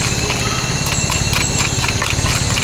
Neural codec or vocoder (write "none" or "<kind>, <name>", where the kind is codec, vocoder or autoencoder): none